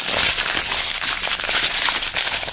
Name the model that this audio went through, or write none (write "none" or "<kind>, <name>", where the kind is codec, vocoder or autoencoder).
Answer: none